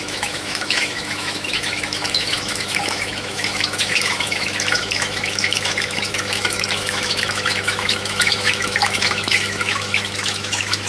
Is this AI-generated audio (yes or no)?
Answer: yes